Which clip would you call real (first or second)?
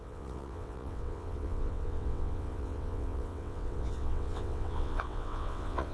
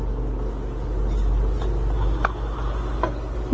second